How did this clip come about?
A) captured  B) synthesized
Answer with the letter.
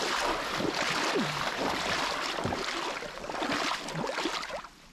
A